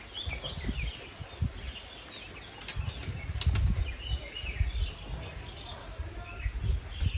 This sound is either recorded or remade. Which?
recorded